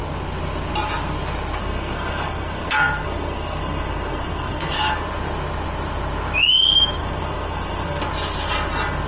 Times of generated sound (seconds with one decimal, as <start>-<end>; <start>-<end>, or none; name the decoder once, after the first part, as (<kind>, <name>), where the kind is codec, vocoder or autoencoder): 1.6-4.9 (codec, SNAC); 7.0-8.0